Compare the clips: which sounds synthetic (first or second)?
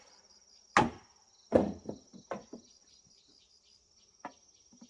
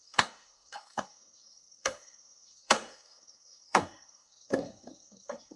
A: second